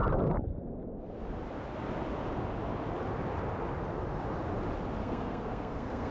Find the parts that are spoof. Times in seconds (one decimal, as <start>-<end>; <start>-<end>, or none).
5.0-6.1